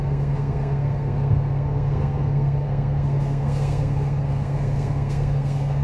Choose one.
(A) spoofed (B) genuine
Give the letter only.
A